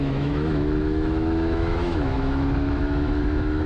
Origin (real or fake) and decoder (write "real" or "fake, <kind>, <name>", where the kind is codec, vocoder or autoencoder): fake, autoencoder, DAC-VAE